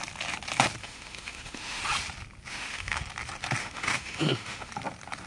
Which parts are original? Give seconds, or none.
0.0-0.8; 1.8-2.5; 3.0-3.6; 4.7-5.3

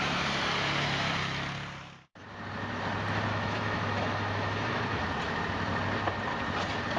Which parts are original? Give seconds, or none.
0.0-3.3; 5.0-7.0

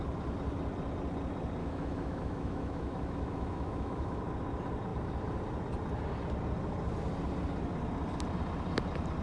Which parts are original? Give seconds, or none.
0.0-1.6; 4.2-9.2

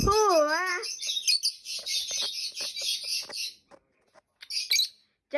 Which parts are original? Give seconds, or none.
0.7-5.4

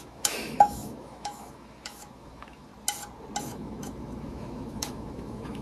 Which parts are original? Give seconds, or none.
2.7-3.4

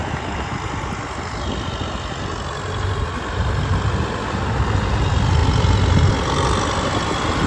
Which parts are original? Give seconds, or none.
0.0-7.5